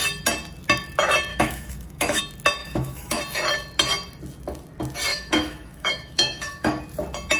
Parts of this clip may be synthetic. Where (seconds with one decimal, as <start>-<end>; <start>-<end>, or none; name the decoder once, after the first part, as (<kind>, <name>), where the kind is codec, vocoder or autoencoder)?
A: 1.3-2.2 (autoencoder, DAC-VAE); 2.6-3.2; 5.1-6.8